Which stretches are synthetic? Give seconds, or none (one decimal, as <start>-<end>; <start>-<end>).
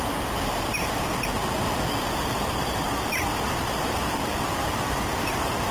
0.0-1.1; 2.1-4.3; 4.8-5.7